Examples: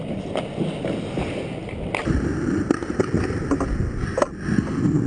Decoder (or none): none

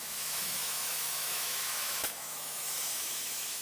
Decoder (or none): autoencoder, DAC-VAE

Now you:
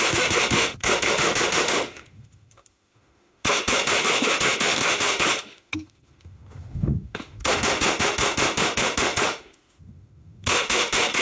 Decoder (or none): autoencoder, DAC-VAE